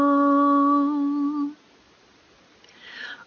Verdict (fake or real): real